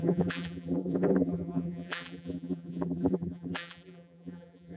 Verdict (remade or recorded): remade